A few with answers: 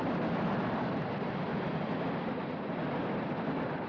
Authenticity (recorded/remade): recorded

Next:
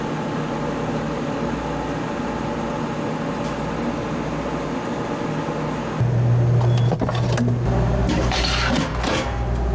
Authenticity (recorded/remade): recorded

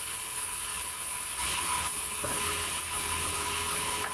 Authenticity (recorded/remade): remade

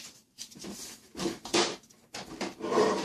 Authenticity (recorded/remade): remade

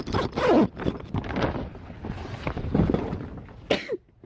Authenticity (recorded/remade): recorded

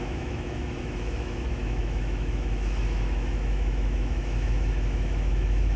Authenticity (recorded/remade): remade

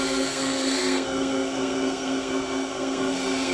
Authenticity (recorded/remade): remade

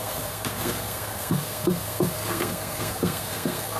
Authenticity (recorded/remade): remade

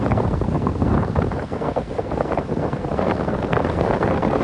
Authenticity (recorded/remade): remade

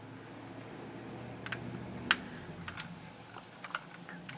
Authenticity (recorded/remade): recorded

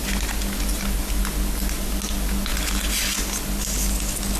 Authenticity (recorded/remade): recorded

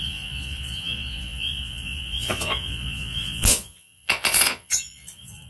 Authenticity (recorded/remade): remade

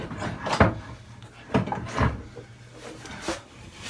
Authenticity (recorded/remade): recorded